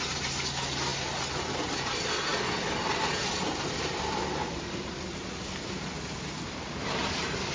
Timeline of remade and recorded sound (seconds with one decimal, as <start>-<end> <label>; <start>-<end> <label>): 0.0-7.5 recorded